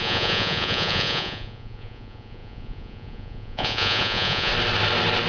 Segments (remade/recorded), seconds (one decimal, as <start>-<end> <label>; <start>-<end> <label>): 0.0-4.5 remade; 4.5-5.3 recorded